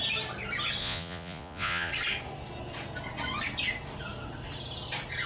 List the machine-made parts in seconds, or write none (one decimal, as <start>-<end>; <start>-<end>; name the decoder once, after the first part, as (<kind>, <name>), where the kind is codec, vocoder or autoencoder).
0.8-1.9 (vocoder, Vocos)

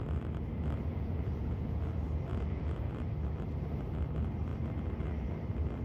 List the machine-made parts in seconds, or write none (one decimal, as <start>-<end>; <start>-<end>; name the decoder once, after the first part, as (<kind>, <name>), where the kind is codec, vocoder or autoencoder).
0.9-1.8 (vocoder, Vocos); 2.3-2.9